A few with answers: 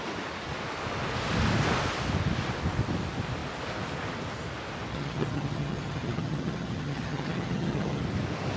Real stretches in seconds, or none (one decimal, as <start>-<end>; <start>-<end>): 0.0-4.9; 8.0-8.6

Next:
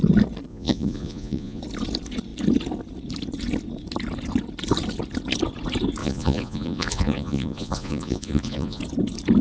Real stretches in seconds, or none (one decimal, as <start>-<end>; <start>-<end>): 0.0-0.5; 1.6-6.0; 8.8-9.4

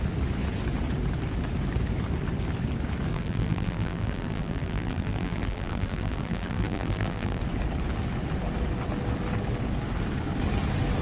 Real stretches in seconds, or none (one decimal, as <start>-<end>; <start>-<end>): 0.0-3.1; 7.4-11.0

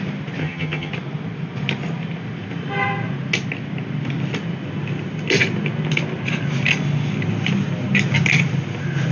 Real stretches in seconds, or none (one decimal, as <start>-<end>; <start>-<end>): 0.0-0.4; 0.9-9.1